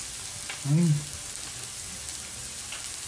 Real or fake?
real